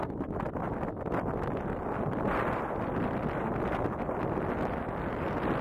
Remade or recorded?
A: recorded